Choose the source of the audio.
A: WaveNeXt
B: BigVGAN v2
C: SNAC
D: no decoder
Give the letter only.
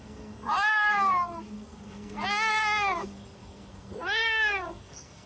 C